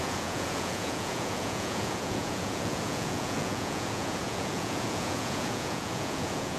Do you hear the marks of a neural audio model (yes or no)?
yes